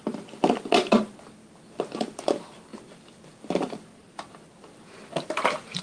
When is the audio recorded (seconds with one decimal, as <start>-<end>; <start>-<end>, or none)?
0.0-5.8